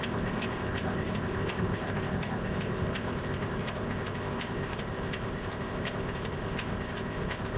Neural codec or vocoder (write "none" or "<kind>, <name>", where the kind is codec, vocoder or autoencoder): codec, ZipCodec